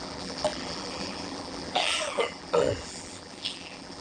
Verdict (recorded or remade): remade